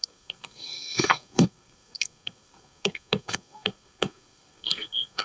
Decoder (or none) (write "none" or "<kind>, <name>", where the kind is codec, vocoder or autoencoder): codec, SNAC